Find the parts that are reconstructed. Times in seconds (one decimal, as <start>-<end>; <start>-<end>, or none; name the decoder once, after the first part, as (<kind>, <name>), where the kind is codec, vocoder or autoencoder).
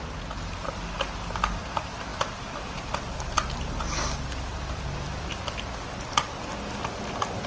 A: 0.0-7.5 (vocoder, BigVGAN v2)